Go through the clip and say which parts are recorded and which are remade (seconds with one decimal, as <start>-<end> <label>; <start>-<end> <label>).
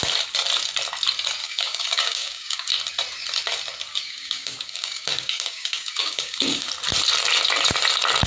0.0-1.4 recorded; 1.4-2.7 remade; 2.7-3.9 recorded; 3.9-6.7 remade; 6.7-8.3 recorded